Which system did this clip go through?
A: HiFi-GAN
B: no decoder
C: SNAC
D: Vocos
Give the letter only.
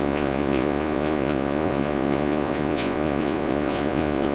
D